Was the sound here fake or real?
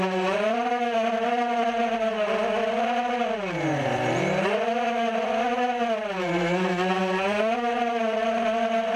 real